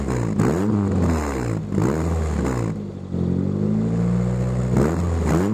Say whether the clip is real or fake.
real